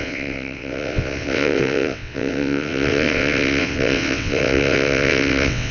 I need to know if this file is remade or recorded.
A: remade